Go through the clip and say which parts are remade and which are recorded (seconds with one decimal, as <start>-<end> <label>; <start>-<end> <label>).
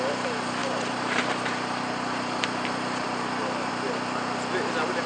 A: 0.0-0.6 recorded; 0.6-3.7 remade; 3.7-5.1 recorded